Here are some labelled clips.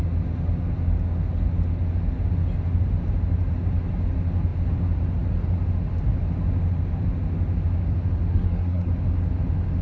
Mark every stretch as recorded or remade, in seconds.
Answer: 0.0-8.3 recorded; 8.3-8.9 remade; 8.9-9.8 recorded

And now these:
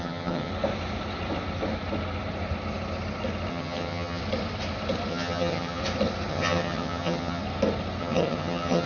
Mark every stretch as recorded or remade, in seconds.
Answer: 0.0-0.5 remade; 0.5-3.5 recorded; 3.5-4.2 remade; 4.2-5.1 recorded; 5.1-5.8 remade; 5.8-6.3 recorded; 6.3-7.4 remade; 7.4-8.0 recorded; 8.0-8.9 remade